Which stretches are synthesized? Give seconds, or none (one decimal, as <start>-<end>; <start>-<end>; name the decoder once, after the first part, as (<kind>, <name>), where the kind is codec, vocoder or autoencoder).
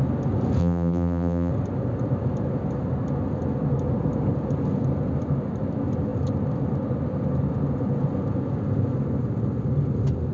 0.6-1.5 (vocoder, BigVGAN v2)